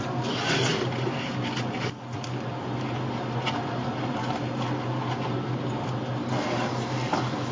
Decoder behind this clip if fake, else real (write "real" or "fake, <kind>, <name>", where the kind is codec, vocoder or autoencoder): real